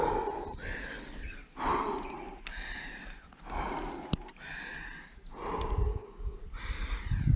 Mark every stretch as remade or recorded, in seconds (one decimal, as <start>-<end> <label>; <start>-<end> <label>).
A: 0.0-5.9 recorded; 5.9-6.4 remade; 6.4-7.4 recorded